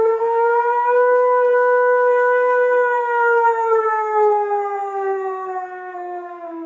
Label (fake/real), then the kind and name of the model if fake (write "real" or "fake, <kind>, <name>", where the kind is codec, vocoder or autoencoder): fake, codec, SNAC